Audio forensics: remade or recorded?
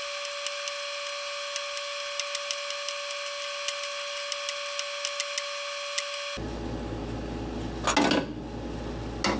recorded